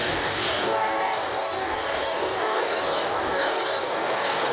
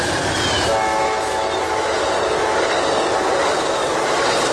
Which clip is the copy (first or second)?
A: first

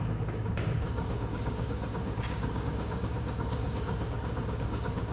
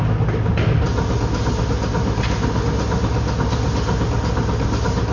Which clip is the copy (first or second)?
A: first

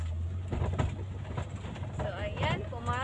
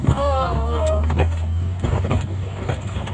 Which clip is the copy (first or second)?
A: second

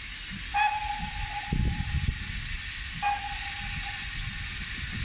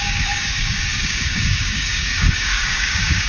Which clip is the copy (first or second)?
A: second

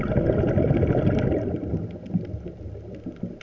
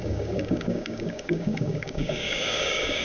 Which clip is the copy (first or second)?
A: second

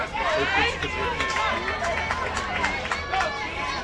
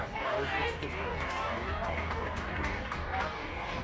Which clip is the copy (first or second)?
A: second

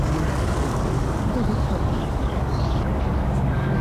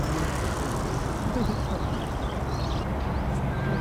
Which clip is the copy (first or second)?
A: first